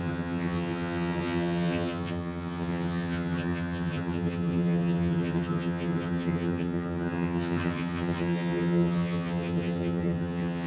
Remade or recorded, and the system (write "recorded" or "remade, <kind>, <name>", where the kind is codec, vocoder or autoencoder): remade, vocoder, HiFi-GAN